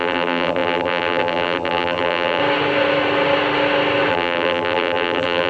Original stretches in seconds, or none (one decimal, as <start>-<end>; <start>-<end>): 2.4-4.1